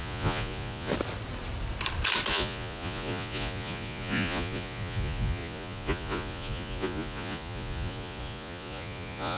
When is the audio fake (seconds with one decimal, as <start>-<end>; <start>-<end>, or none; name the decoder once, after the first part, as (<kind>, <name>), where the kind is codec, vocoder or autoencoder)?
0.0-0.9 (vocoder, Vocos); 2.3-9.4